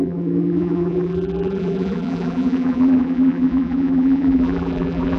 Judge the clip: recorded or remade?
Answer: remade